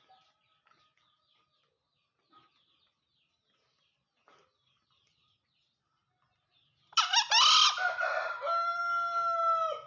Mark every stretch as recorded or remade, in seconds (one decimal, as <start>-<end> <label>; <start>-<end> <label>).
0.0-9.9 recorded